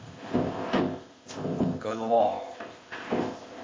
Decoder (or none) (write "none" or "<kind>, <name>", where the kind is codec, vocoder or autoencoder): codec, ZipCodec